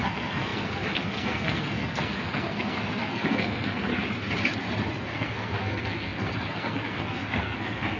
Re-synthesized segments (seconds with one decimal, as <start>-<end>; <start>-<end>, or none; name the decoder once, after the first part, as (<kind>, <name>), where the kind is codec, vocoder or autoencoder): 0.0-3.9 (codec, SNAC); 5.0-8.0

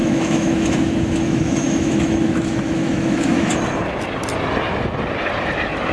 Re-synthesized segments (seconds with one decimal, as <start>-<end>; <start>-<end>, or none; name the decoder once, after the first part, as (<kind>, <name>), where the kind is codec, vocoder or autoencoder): 0.0-3.5 (autoencoder, DAC-VAE)

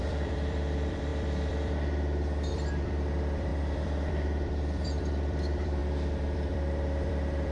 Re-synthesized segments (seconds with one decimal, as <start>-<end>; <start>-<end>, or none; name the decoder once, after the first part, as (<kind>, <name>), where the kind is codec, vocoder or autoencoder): 0.0-7.5 (vocoder, BigVGAN v2)

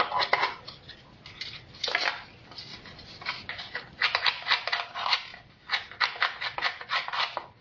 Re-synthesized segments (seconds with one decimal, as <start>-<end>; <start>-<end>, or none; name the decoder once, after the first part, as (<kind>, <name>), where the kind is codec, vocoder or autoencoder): none

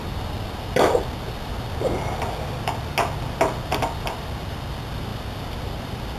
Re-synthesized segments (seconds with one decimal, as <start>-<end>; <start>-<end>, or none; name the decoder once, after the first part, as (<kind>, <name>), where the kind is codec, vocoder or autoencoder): none